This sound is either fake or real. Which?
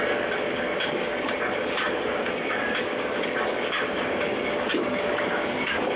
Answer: fake